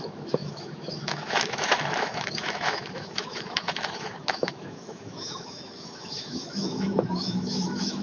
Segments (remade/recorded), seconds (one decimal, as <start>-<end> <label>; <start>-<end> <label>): 0.0-8.0 remade